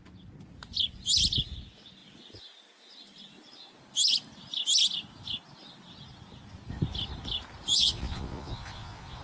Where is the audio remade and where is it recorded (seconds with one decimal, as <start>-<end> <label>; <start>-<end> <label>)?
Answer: 0.0-7.7 recorded; 7.7-9.2 remade

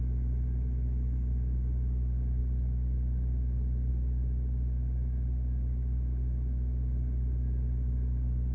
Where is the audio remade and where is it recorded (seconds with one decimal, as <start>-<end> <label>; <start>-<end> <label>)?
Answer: 0.0-8.5 recorded

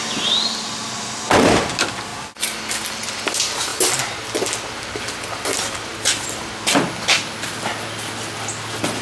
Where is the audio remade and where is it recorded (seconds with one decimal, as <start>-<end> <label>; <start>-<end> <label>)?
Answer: 0.0-2.1 recorded; 2.1-3.2 remade; 3.2-5.9 recorded; 5.9-6.5 remade; 6.5-9.0 recorded